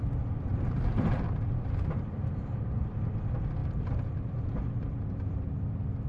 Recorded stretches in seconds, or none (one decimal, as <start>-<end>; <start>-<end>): 0.0-0.5; 3.1-3.6; 5.4-6.1